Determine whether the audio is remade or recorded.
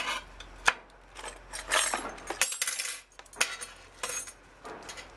recorded